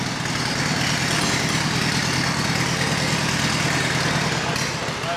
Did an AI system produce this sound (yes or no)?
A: no